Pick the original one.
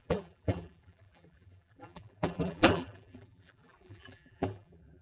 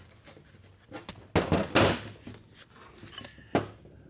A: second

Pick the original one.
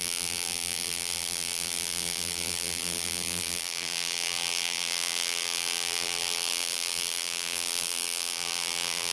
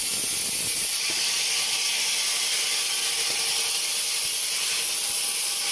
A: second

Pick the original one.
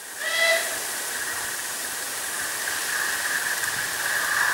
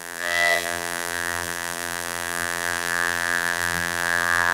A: first